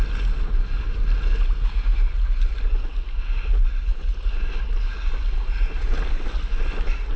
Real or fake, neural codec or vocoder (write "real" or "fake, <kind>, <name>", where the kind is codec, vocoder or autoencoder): real